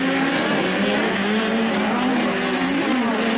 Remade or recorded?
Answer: recorded